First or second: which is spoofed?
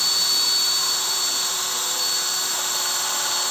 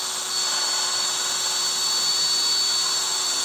first